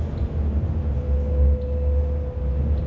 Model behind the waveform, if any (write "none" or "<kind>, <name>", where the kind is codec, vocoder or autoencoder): none